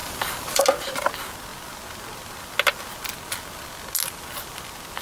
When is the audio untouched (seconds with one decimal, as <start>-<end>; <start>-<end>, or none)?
0.6-5.0